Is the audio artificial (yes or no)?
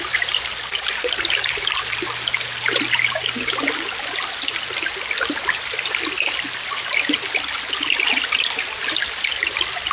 no